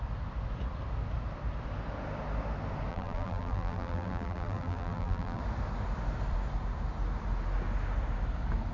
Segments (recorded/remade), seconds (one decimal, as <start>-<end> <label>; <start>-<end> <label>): 0.0-2.9 recorded; 2.9-5.4 remade; 5.4-8.7 recorded